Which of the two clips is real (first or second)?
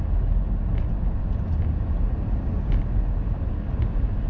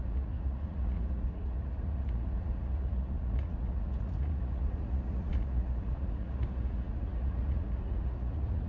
first